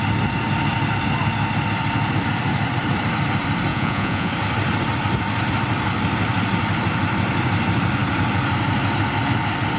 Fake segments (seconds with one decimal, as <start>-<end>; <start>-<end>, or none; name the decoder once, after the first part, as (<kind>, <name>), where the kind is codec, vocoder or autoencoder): 3.7-4.3 (vocoder, Vocos)